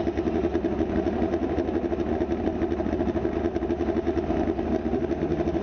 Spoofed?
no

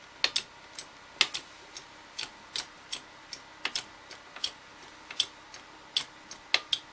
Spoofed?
no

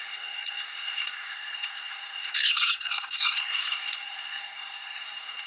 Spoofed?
yes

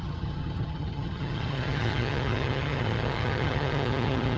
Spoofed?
yes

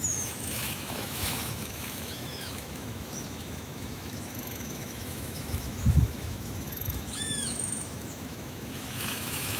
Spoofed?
yes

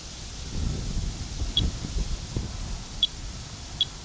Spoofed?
yes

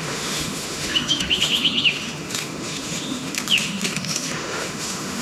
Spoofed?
yes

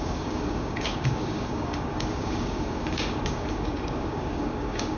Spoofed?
yes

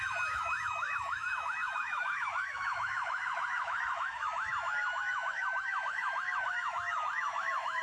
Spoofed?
yes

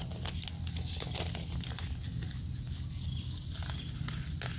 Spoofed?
no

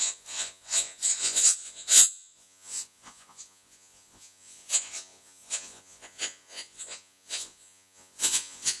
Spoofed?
yes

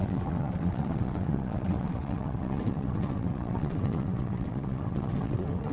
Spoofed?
yes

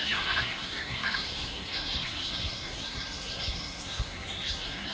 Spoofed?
yes